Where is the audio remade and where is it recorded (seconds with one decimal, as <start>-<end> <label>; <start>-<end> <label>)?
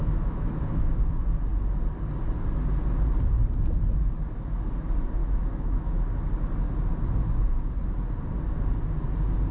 0.0-0.5 remade; 0.5-5.2 recorded; 5.2-6.0 remade; 6.0-9.5 recorded